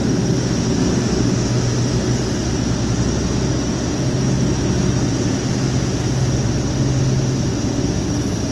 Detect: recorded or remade recorded